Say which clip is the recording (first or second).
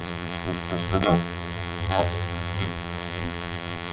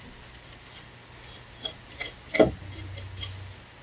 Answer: second